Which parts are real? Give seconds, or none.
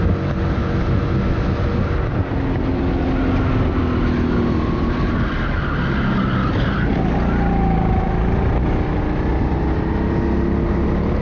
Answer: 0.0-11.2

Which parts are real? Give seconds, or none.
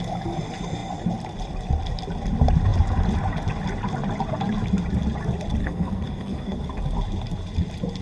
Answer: 0.0-5.6; 6.6-8.0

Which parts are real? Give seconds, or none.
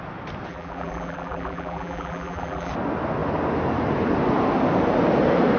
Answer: 0.0-0.5; 2.7-5.6